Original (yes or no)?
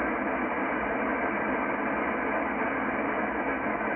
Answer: yes